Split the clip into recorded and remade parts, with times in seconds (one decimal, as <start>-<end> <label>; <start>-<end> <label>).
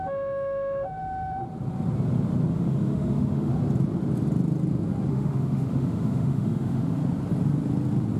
0.0-1.4 remade; 1.4-2.5 recorded; 2.5-3.5 remade; 3.5-5.1 recorded; 5.1-7.0 remade; 7.0-8.2 recorded